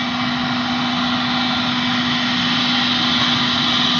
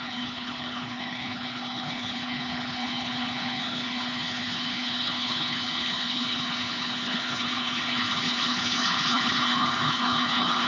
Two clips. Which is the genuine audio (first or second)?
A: first